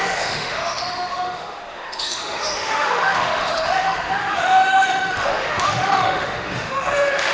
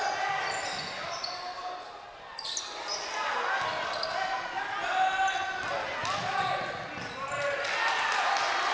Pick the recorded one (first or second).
second